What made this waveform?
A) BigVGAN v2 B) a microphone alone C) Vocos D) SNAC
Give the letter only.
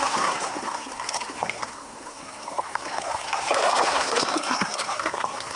D